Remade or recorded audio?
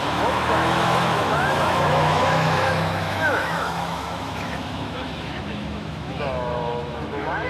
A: remade